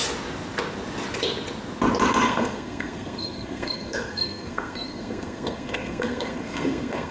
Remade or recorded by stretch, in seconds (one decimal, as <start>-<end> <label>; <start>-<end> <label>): 0.0-2.2 recorded; 2.2-7.1 remade